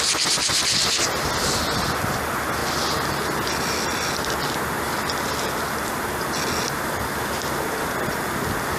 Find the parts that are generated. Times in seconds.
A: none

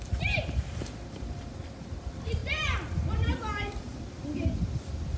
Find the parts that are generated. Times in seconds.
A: 0.0-5.2 (vocoder, BigVGAN v2)